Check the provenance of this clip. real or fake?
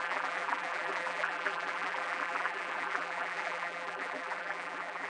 fake